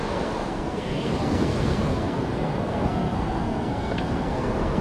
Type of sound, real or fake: fake